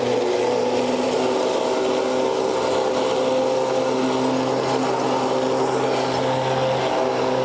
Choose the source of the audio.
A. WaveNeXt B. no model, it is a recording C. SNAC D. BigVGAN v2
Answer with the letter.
B